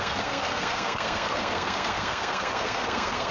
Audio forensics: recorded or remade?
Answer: remade